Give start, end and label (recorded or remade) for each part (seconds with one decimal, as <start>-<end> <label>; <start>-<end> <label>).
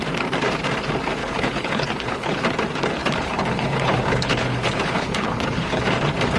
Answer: 0.0-1.2 recorded; 1.2-2.4 remade; 2.4-3.0 recorded; 3.0-5.8 remade; 5.8-6.4 recorded